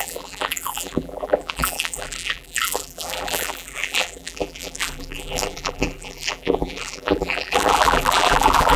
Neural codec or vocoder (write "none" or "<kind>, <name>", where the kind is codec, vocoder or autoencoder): vocoder, BigVGAN v2